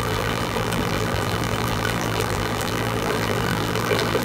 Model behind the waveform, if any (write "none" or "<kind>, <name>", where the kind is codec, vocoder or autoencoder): vocoder, BigVGAN v2